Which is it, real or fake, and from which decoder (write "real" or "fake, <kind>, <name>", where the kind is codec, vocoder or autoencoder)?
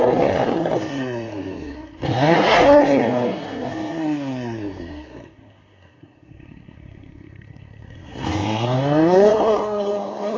fake, codec, SNAC